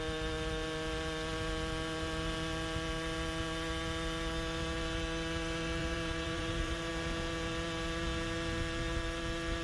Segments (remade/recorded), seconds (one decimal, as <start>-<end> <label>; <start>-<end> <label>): 0.0-5.8 recorded; 5.8-6.9 remade; 6.9-9.6 recorded